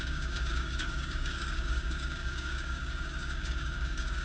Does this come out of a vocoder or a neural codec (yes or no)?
yes